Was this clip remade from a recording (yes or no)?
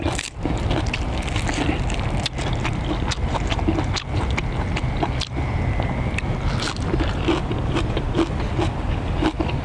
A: no